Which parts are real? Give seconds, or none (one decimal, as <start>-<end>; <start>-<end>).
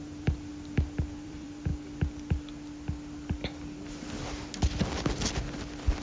0.5-1.1; 1.7-5.3